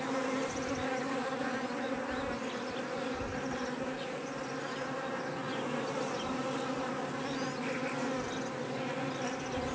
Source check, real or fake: real